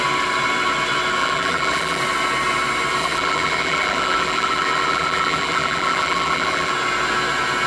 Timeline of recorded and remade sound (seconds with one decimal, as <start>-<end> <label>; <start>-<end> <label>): 0.0-1.2 recorded; 1.2-2.0 remade; 2.0-3.0 recorded; 3.0-6.7 remade; 6.7-7.7 recorded